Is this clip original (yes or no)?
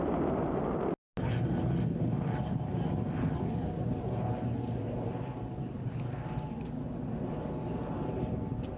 yes